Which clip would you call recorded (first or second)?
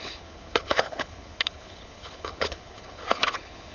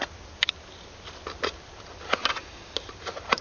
second